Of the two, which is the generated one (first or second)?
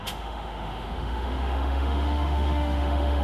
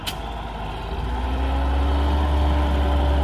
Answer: first